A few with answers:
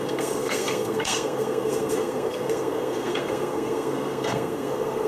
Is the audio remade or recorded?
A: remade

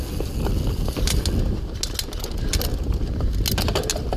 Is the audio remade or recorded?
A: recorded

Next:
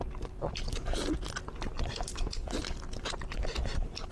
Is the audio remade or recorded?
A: recorded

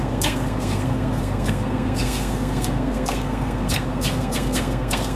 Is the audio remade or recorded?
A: remade